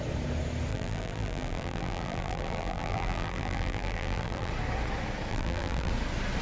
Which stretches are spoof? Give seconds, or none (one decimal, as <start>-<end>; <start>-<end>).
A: 0.7-4.5; 5.3-5.9